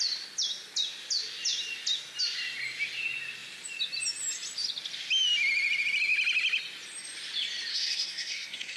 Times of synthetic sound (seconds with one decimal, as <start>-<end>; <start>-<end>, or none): 7.7-8.8